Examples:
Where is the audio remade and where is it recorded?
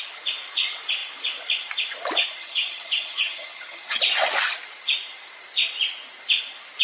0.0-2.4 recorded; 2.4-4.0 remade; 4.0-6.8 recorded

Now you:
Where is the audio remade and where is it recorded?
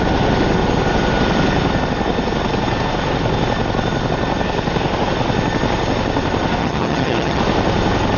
0.0-6.6 recorded; 6.6-7.4 remade; 7.4-8.2 recorded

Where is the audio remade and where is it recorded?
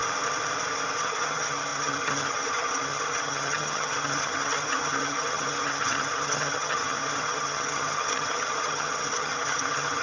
0.0-1.0 recorded; 1.0-10.0 remade